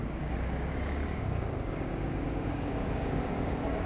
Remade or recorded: remade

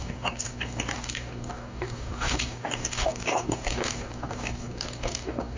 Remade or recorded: remade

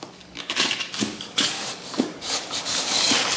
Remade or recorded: remade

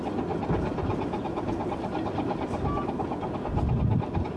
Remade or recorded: recorded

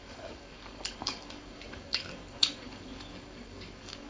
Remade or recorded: remade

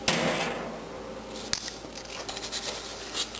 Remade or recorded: recorded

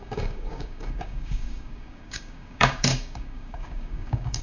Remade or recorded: remade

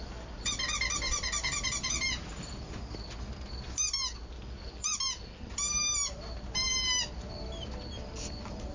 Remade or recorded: recorded